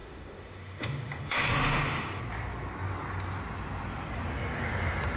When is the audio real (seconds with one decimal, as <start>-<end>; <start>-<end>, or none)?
2.2-5.2